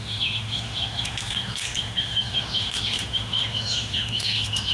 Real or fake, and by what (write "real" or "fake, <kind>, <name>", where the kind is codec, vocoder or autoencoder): fake, autoencoder, DAC-VAE